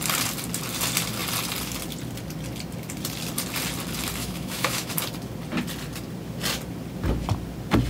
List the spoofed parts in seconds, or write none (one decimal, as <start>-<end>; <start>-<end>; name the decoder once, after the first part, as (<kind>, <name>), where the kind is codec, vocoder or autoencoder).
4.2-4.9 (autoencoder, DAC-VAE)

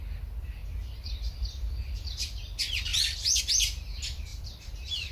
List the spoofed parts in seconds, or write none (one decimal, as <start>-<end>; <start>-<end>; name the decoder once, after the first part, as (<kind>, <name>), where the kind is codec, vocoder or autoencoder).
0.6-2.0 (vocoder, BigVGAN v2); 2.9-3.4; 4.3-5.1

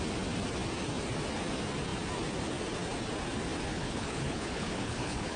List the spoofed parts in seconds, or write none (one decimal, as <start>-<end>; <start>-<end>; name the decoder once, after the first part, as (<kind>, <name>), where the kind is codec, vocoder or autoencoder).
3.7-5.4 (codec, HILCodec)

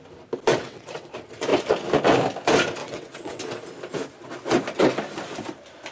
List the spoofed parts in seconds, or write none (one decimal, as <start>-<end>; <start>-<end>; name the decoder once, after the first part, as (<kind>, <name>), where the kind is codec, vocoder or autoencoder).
0.5-1.1 (vocoder, WaveNeXt); 2.8-3.4

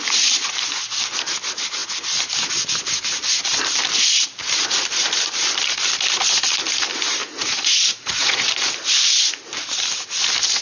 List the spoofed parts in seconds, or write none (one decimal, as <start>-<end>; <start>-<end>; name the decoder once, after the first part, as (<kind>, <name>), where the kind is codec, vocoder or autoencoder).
7.2-8.5 (vocoder, Vocos)